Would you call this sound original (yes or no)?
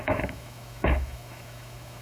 no